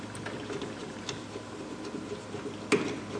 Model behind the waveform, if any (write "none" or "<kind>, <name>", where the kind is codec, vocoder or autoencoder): none